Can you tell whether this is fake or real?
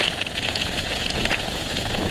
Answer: fake